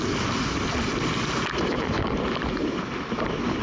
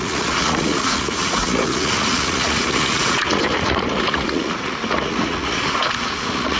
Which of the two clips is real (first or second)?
first